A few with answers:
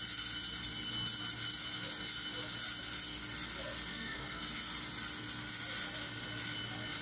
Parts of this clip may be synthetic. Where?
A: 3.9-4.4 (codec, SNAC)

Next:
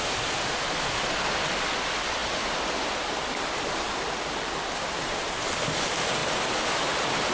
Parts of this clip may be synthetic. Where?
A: none